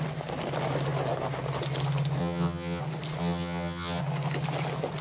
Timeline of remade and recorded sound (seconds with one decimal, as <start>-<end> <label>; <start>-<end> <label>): 0.0-2.2 recorded; 2.2-2.8 remade; 2.8-3.2 recorded; 3.2-4.0 remade; 4.0-5.0 recorded